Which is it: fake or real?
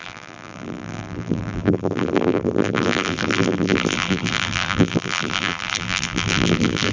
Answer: fake